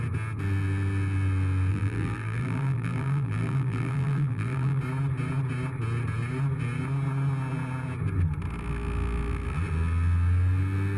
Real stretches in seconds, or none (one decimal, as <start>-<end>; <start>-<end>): 0.0-1.7; 4.8-11.0